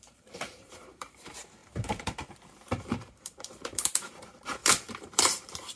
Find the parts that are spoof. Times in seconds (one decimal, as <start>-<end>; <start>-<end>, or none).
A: 0.0-5.8